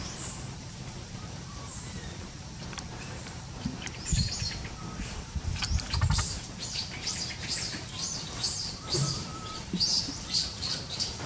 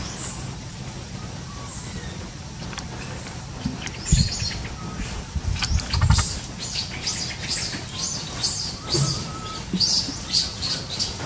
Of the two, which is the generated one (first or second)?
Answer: first